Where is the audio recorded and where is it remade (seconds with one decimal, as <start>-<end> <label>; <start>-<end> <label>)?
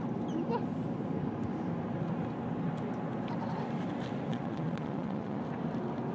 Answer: 0.0-4.3 recorded; 4.3-5.4 remade; 5.4-6.1 recorded